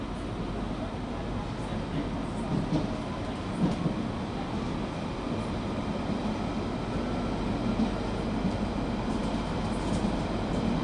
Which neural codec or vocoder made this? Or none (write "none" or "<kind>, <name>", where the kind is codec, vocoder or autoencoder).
none